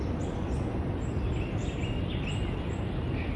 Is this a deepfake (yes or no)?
no